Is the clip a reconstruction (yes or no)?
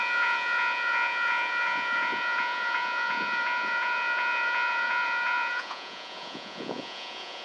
yes